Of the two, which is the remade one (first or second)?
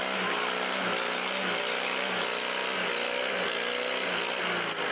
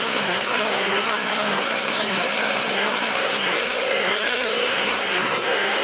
second